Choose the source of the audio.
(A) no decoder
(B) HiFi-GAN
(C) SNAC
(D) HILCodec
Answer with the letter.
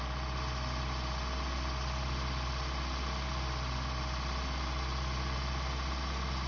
A